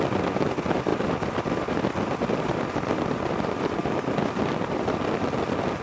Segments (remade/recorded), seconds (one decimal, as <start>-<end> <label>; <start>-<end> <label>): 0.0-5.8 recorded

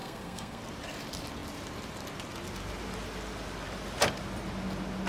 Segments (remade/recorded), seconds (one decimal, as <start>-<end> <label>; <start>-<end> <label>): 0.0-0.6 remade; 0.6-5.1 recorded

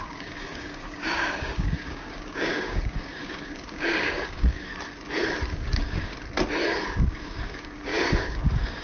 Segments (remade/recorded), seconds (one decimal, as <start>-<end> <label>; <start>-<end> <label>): 0.0-4.7 remade; 4.7-5.5 recorded; 5.5-6.1 remade; 6.1-7.1 recorded; 7.1-8.8 remade